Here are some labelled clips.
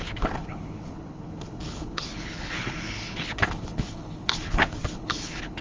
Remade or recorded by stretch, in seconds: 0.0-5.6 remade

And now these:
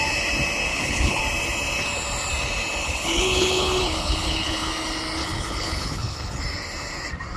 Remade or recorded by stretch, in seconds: 0.0-0.7 recorded; 0.7-1.2 remade; 1.2-2.8 recorded; 2.8-4.7 remade; 4.7-5.2 recorded; 5.2-6.4 remade; 6.4-7.4 recorded

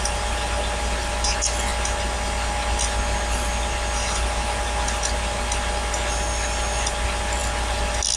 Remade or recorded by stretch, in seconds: 0.0-8.2 recorded

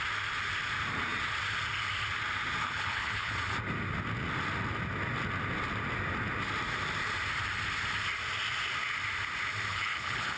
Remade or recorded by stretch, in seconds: 0.0-2.6 recorded; 2.6-3.3 remade; 3.3-9.7 recorded; 9.7-10.4 remade

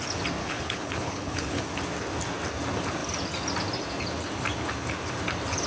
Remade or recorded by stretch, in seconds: 0.0-0.4 recorded; 0.4-1.6 remade; 1.6-5.7 recorded

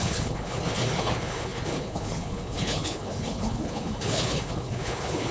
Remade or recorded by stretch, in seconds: 0.0-5.3 remade

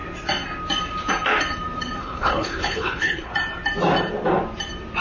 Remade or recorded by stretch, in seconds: 0.0-2.0 recorded; 2.0-3.3 remade; 3.3-5.0 recorded